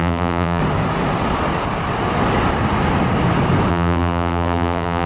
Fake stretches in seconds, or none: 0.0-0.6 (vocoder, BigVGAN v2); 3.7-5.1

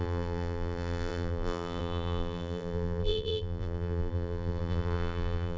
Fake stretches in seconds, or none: 0.0-5.6 (vocoder, BigVGAN v2)

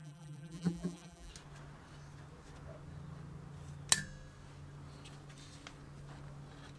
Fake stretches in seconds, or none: 0.0-1.3 (vocoder, BigVGAN v2)

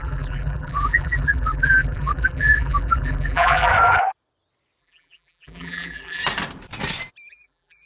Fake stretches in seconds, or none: 0.0-3.7 (vocoder, BigVGAN v2); 4.8-6.2; 7.3-7.9

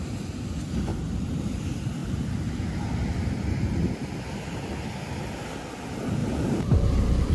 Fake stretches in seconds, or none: 0.9-1.6 (vocoder, BigVGAN v2); 2.0-2.5; 6.2-7.3

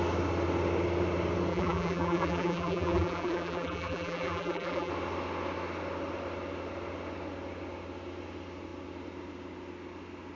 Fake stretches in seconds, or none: 1.5-4.9 (vocoder, BigVGAN v2)